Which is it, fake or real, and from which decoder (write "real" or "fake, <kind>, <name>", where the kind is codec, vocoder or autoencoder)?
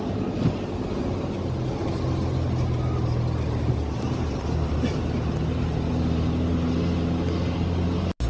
real